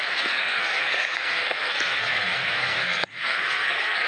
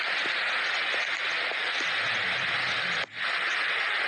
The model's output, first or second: first